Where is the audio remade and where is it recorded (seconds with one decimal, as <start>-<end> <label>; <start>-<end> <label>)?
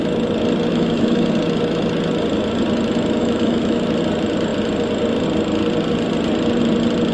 0.0-0.7 recorded; 0.7-1.3 remade; 1.3-3.2 recorded; 3.2-4.0 remade; 4.0-7.1 recorded